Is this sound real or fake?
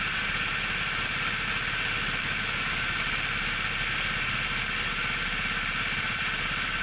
real